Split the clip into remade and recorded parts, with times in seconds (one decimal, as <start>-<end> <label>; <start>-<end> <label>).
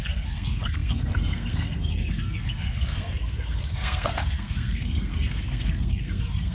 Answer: 0.0-6.5 remade